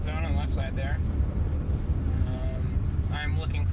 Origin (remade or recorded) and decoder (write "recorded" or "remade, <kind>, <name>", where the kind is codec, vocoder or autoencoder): recorded